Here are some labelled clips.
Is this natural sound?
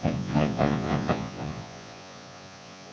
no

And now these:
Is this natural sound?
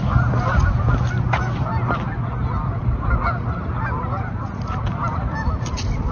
yes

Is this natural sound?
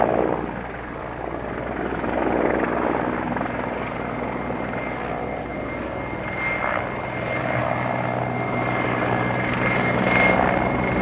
yes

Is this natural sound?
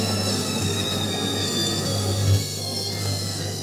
no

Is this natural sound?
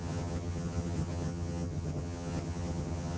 no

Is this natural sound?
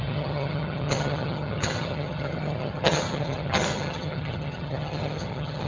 no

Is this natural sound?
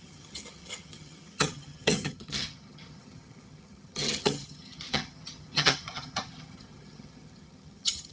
no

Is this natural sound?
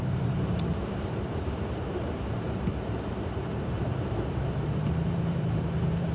no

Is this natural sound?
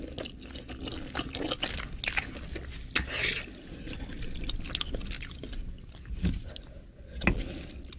yes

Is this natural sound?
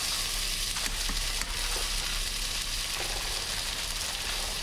yes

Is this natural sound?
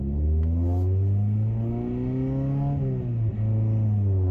yes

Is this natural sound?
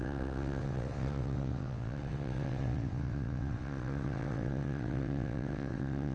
no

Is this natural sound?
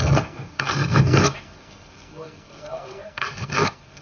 no